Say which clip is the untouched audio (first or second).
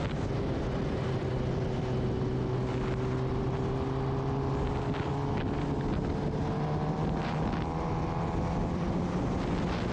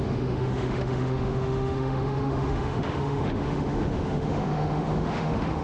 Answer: first